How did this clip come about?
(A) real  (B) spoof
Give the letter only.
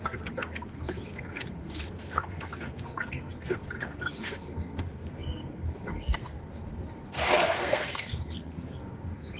B